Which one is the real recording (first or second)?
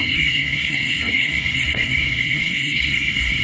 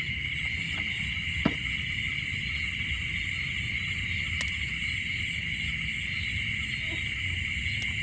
second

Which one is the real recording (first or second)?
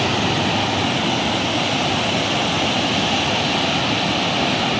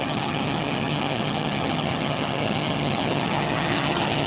first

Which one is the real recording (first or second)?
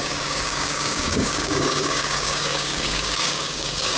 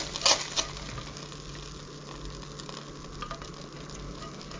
second